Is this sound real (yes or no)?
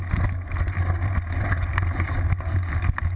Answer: yes